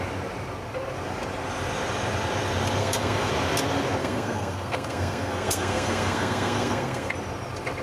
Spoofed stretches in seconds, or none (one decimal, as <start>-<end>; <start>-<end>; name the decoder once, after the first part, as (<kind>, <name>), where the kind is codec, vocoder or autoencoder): 2.8-3.3 (codec, SNAC); 4.0-7.1